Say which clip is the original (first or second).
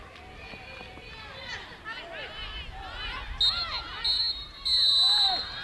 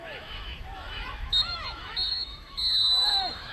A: first